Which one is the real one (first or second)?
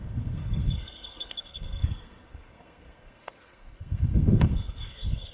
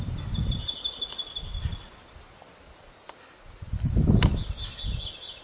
second